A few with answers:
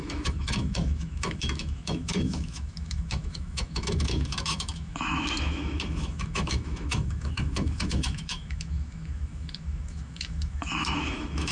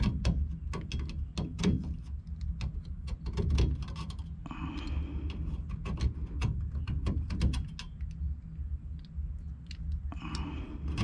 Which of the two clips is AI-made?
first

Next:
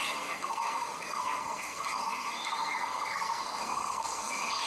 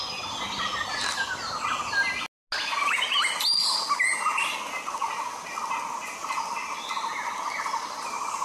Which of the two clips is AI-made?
first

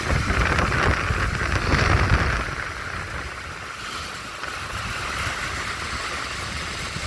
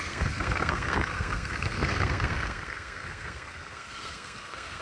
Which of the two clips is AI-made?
second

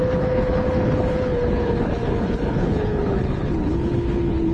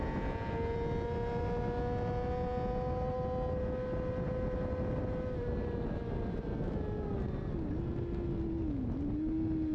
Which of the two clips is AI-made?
first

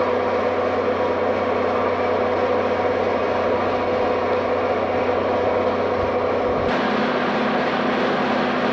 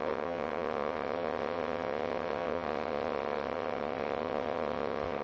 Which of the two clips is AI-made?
second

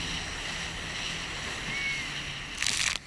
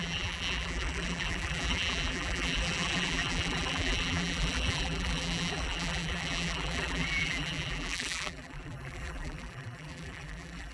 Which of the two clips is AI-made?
second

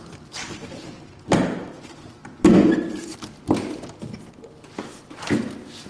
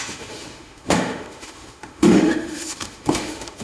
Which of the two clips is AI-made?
second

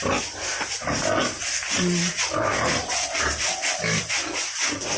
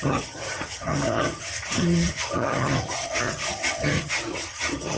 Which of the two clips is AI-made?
second